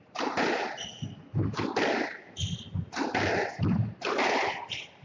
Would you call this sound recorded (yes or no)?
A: yes